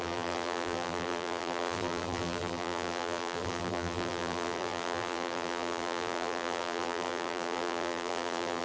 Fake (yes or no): yes